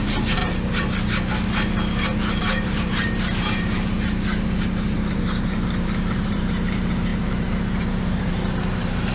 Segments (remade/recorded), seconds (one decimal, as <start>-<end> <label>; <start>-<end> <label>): 0.0-0.4 remade; 0.4-2.4 recorded; 2.4-9.1 remade